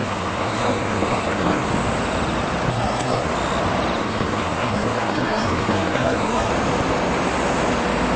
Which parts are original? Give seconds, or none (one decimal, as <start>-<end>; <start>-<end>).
1.7-2.7; 3.3-4.0; 6.5-8.2